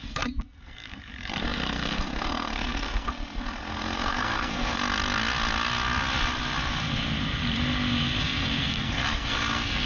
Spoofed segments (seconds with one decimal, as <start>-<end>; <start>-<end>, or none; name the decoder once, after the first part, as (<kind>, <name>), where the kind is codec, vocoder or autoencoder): 0.0-4.8 (codec, SNAC); 8.2-9.9